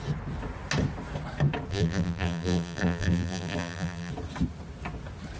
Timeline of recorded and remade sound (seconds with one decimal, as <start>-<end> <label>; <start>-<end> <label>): 0.0-1.7 recorded; 1.7-4.1 remade; 4.1-5.4 recorded